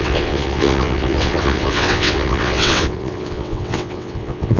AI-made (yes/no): yes